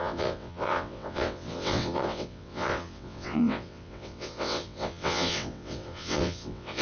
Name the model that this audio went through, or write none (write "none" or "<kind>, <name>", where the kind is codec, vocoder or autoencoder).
vocoder, WaveNeXt